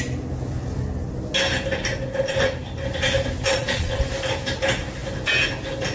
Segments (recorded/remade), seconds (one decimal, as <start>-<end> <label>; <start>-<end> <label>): 0.0-3.5 recorded; 3.5-4.0 remade; 4.0-5.9 recorded